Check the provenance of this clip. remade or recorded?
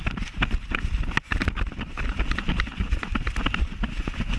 recorded